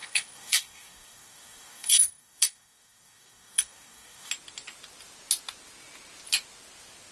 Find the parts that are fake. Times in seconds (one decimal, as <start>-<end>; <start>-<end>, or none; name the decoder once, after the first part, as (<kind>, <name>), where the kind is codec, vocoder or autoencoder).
0.0-4.3 (codec, DAC)